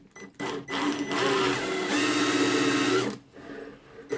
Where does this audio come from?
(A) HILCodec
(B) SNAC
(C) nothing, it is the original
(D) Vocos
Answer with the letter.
C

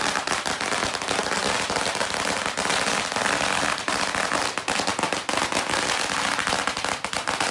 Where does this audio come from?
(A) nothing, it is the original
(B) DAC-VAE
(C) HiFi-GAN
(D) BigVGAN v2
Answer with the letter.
A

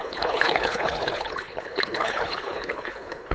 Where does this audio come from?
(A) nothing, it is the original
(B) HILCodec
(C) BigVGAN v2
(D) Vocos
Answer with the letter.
B